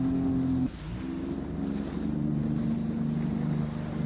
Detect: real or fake real